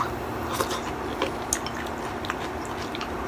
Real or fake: real